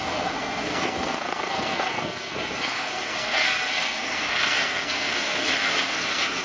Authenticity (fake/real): fake